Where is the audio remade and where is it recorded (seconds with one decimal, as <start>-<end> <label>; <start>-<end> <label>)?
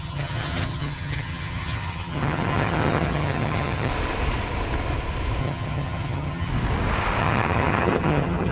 0.0-3.9 remade; 3.9-5.4 recorded; 5.4-6.5 remade; 6.5-7.2 recorded; 7.2-8.5 remade